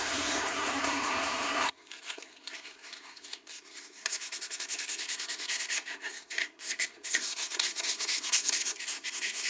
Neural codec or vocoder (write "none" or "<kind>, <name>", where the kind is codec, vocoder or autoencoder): codec, SNAC